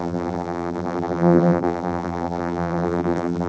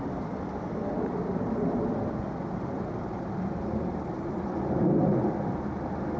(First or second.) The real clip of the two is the second